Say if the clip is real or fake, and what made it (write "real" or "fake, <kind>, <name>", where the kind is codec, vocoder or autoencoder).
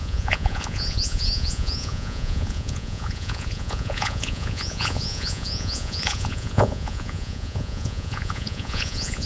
fake, vocoder, Vocos